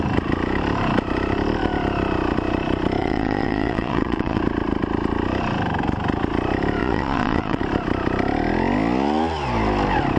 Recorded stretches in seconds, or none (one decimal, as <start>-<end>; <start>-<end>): 0.0-3.0; 4.4-6.8; 7.6-10.2